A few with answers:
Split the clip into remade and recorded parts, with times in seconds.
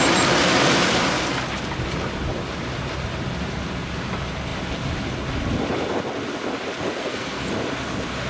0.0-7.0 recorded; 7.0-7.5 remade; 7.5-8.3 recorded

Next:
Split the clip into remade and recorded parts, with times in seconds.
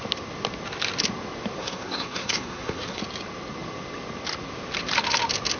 0.0-1.6 recorded; 1.6-3.0 remade; 3.0-5.6 recorded